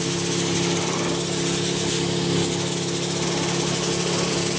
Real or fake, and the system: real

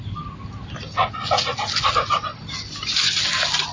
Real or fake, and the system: real